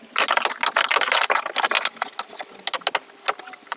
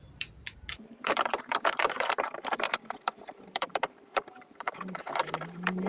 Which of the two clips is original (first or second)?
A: first